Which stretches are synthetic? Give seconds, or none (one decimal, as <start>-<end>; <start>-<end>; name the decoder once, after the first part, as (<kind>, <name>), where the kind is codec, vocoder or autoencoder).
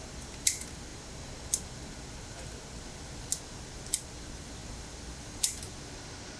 none